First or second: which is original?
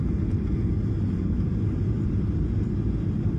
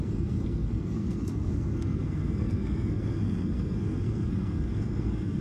first